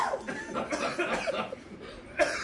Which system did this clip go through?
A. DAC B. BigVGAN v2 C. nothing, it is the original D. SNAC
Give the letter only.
B